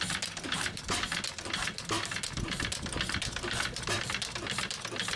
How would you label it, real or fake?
fake